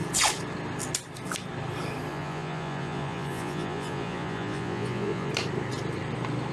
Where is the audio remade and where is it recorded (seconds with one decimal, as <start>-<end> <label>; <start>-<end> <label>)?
0.0-2.1 recorded; 2.1-5.3 remade; 5.3-6.5 recorded